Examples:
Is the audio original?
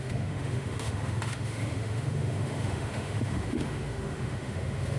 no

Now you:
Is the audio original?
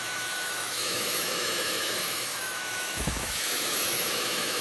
no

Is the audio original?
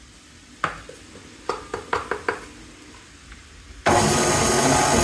yes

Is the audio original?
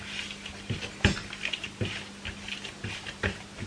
yes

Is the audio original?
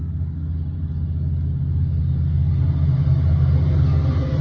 yes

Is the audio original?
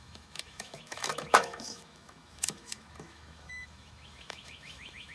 no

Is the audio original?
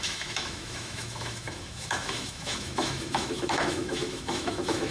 no